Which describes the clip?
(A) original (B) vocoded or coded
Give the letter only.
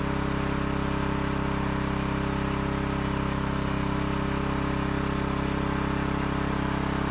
A